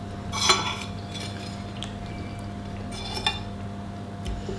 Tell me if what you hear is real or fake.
real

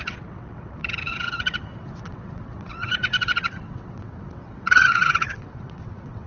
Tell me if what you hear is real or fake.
fake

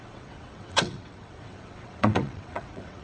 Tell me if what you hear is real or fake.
fake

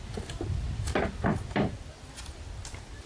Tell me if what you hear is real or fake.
real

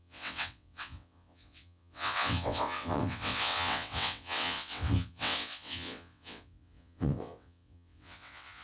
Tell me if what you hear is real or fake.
fake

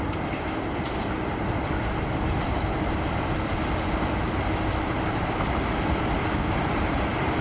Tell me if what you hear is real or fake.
real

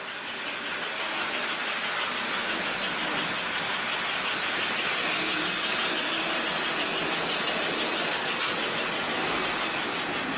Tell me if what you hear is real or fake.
real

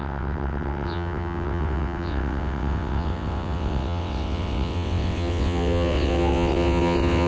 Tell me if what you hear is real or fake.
fake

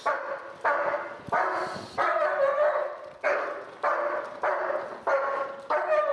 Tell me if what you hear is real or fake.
real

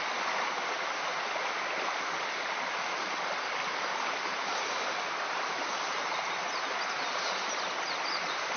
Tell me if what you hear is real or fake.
real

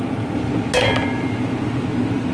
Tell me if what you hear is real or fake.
real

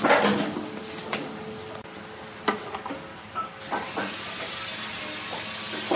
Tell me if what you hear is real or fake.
real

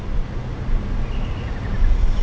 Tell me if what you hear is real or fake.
real